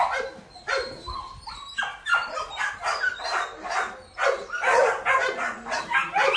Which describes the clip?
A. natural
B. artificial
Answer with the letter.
A